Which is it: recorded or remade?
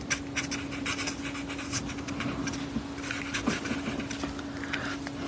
recorded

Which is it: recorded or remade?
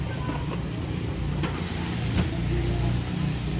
recorded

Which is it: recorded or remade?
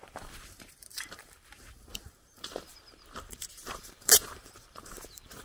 remade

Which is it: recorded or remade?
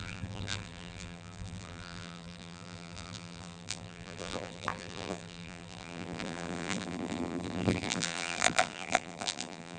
remade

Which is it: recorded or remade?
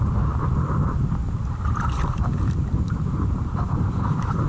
remade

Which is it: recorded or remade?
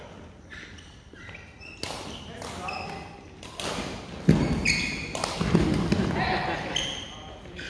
recorded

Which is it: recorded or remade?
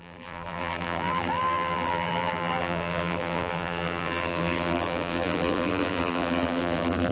remade